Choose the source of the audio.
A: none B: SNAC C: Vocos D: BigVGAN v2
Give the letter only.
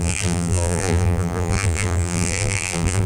D